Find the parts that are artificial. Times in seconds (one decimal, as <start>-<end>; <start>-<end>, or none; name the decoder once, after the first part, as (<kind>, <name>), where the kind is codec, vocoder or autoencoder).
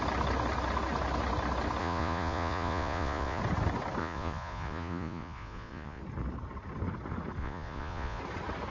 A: 1.8-3.4 (vocoder, Vocos); 4.0-6.0; 7.4-8.2